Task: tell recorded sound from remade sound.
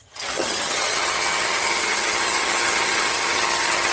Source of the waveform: remade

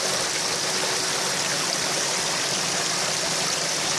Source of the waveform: recorded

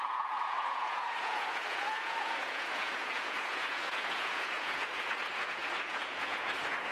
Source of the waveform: remade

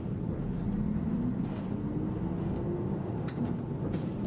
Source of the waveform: recorded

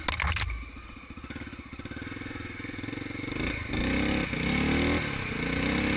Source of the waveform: recorded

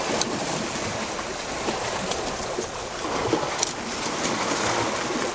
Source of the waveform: recorded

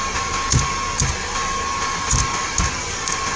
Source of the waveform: recorded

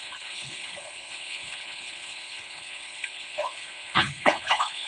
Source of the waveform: remade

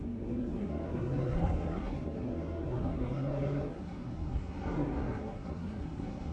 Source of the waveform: remade